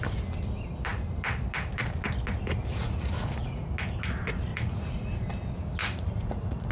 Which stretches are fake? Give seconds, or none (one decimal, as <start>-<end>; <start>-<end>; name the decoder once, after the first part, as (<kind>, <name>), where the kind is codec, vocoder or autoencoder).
2.7-3.7 (vocoder, Vocos); 4.5-5.2; 5.8-6.7